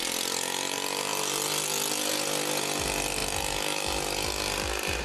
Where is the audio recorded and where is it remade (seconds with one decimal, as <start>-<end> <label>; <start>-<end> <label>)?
0.0-5.0 recorded